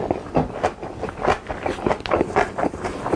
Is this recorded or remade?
recorded